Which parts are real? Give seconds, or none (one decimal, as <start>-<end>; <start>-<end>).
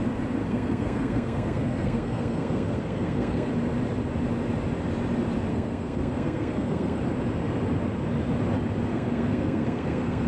0.0-0.4; 3.5-5.5; 7.0-8.9